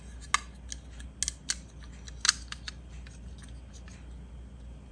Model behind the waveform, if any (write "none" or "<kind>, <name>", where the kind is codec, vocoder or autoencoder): none